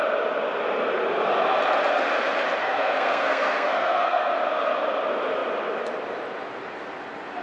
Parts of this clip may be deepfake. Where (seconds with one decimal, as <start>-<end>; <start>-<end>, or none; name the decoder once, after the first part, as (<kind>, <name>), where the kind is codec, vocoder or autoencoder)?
2.6-4.3 (codec, SNAC)